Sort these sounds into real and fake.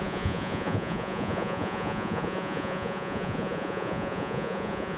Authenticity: fake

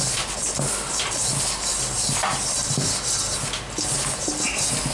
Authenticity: real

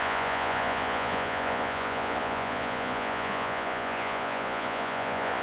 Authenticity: fake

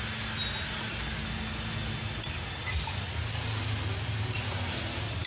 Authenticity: real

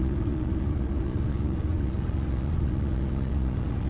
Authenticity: fake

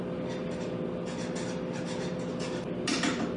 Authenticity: real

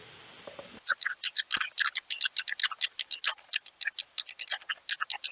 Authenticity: real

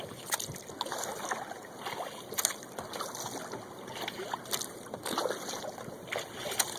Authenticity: real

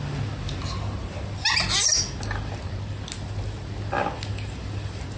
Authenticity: real